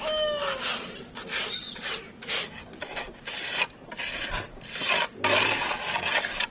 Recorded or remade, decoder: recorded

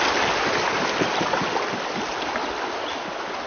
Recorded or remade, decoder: recorded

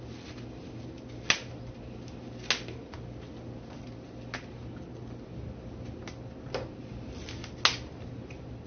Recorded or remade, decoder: recorded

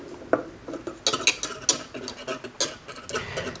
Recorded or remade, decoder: recorded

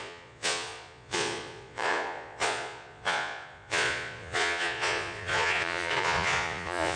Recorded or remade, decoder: remade, vocoder, Vocos